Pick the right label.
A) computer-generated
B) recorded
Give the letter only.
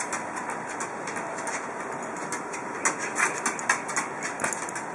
B